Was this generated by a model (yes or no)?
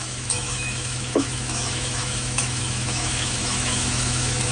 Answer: yes